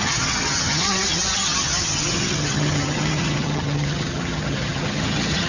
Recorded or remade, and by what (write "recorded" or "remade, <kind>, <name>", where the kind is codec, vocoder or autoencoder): remade, vocoder, HiFi-GAN